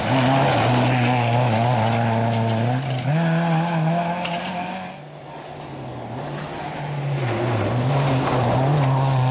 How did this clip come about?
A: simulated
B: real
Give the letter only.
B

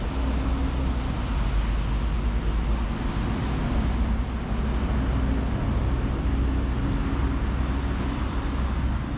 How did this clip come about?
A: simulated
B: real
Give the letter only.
B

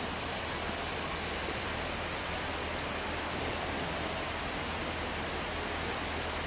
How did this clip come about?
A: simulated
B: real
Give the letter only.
B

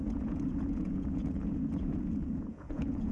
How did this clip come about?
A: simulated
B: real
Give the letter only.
A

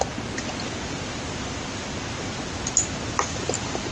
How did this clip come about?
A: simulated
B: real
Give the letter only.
B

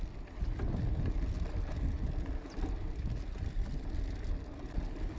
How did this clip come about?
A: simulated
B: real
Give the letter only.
B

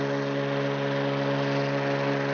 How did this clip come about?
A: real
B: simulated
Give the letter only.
A